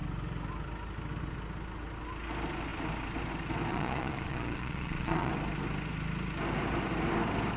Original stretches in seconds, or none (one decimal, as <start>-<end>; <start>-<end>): 0.0-3.7; 5.3-7.6